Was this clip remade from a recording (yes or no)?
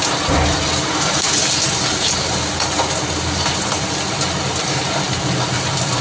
no